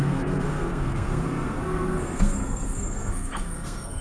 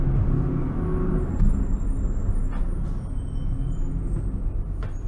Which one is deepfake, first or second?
first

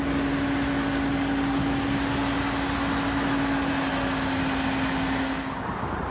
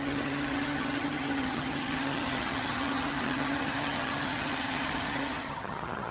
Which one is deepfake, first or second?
second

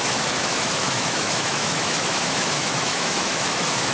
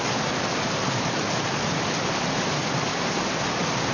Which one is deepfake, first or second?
first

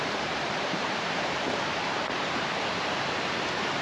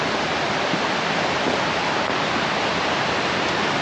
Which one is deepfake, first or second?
first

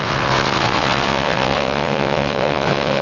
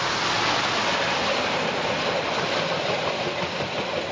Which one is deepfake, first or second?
first